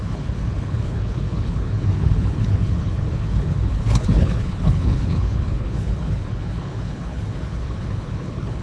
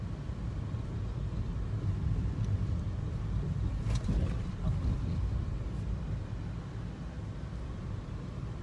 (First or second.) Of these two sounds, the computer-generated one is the first